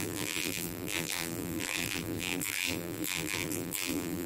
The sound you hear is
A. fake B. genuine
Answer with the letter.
A